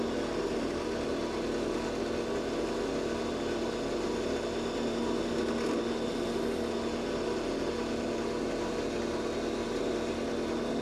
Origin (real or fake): real